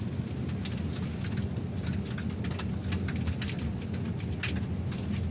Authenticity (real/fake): real